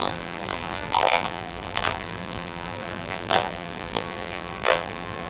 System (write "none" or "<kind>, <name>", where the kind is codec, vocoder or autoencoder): vocoder, BigVGAN v2